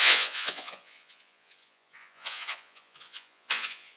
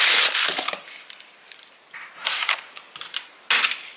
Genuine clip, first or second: second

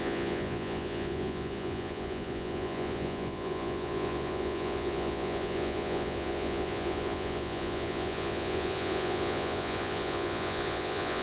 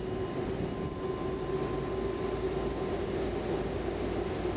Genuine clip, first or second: second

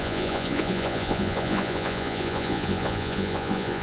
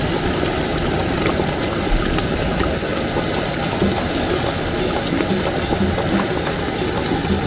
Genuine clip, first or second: second